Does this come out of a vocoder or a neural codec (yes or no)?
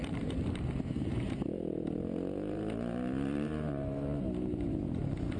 yes